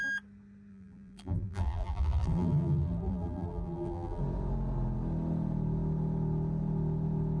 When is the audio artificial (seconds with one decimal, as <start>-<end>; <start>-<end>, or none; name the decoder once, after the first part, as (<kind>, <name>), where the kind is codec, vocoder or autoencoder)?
0.7-4.2 (vocoder, BigVGAN v2)